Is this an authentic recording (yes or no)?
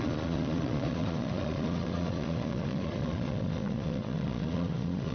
no